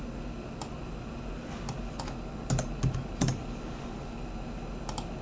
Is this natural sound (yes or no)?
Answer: yes